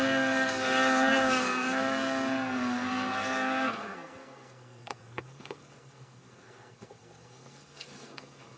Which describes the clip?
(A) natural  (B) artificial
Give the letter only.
B